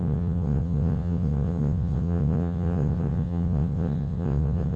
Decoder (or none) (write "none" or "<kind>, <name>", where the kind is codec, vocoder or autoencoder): vocoder, WaveNeXt